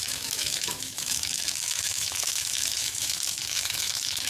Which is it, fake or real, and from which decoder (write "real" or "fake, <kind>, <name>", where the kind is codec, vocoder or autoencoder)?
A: fake, autoencoder, DAC-VAE